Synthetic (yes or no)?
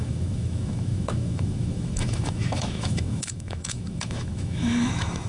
yes